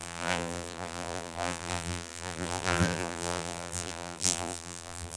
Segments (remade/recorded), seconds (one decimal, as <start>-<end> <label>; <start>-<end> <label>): 0.0-5.2 remade